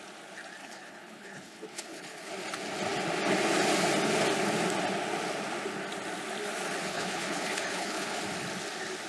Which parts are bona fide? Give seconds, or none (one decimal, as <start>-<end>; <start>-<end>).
0.0-0.6; 2.3-6.9; 8.2-9.1